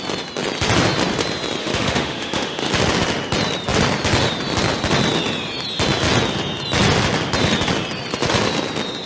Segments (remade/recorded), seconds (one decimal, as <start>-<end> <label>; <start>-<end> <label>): 0.0-1.6 recorded; 1.6-2.7 remade; 2.7-9.1 recorded